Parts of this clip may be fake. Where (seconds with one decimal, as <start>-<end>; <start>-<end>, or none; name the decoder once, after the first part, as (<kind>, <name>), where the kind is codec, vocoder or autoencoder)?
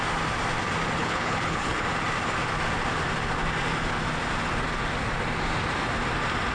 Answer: 1.0-1.8 (codec, HILCodec)